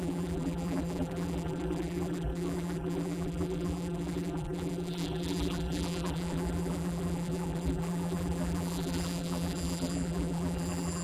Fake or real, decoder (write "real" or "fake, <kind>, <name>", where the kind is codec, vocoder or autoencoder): fake, vocoder, BigVGAN v2